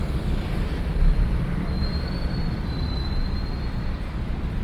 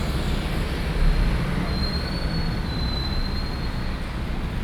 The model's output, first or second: first